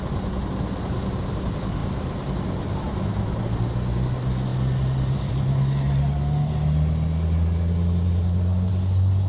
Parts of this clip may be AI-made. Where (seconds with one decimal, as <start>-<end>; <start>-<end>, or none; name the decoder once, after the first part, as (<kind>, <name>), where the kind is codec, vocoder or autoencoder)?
1.8-3.2 (vocoder, BigVGAN v2)